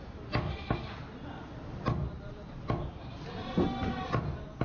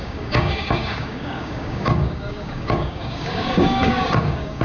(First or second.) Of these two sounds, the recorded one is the first